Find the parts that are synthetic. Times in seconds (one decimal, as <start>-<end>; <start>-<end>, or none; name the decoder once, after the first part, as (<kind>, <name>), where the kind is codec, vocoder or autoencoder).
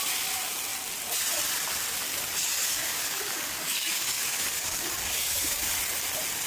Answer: 2.6-5.7 (codec, DAC)